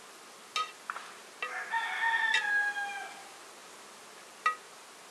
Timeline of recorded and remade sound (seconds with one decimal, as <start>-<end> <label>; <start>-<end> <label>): 0.0-5.1 recorded